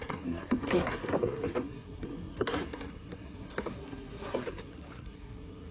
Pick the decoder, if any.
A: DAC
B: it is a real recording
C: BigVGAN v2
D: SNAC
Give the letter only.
D